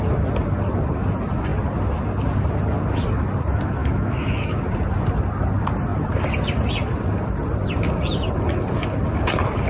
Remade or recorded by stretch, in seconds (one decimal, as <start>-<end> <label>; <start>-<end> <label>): 0.0-3.8 recorded; 3.8-4.6 remade; 4.6-9.7 recorded

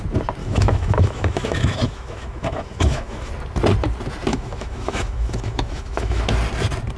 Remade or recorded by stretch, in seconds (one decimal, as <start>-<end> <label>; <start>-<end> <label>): 0.0-0.4 recorded; 0.4-3.3 remade; 3.3-4.3 recorded; 4.3-6.2 remade; 6.2-7.0 recorded

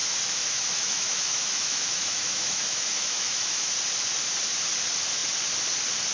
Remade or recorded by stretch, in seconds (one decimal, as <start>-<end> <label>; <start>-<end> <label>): 0.0-3.7 remade; 3.7-6.1 recorded

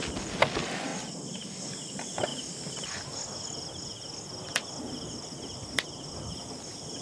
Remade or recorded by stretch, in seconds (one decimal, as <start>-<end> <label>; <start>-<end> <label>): 0.0-7.0 recorded

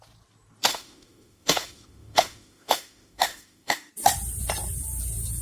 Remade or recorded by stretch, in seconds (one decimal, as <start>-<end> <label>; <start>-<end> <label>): 0.0-0.7 recorded; 0.7-3.9 remade; 3.9-5.4 recorded

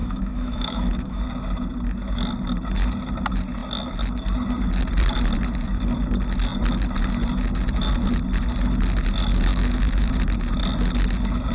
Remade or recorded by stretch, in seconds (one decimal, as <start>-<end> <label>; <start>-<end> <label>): 0.0-1.2 remade; 1.2-9.5 recorded; 9.5-10.1 remade; 10.1-11.5 recorded

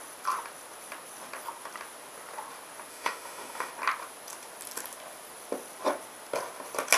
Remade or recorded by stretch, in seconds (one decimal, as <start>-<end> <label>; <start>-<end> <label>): 0.0-2.9 recorded; 2.9-3.7 remade; 3.7-7.0 recorded